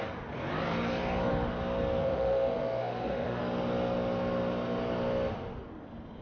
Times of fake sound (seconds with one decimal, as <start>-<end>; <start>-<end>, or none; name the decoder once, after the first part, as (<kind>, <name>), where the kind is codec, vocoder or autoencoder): 2.0-3.4 (autoencoder, DAC-VAE)